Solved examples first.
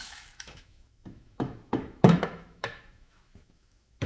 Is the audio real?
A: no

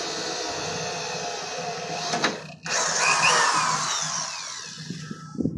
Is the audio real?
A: yes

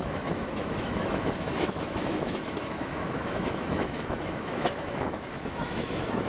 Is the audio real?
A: no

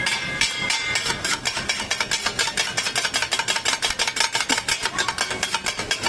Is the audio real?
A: yes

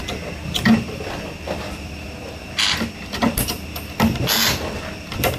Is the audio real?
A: yes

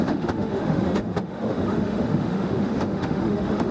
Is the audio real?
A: no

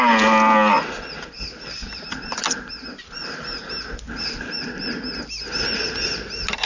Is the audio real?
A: yes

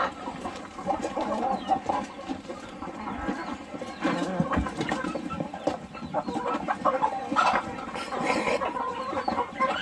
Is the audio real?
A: yes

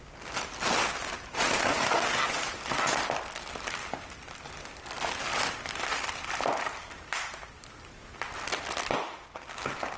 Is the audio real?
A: yes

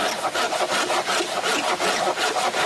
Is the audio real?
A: yes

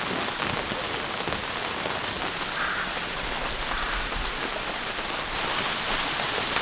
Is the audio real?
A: yes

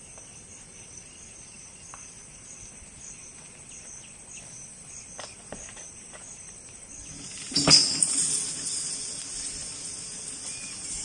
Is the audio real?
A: yes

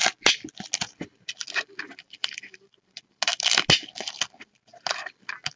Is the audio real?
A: yes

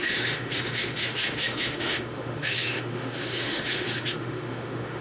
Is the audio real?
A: no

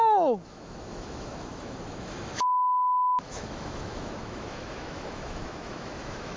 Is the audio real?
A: no